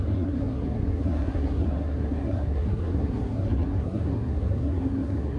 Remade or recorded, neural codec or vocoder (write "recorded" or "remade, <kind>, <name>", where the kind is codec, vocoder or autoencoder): remade, codec, SNAC